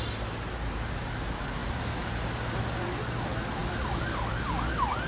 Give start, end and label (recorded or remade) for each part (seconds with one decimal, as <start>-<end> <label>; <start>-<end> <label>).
0.0-5.1 recorded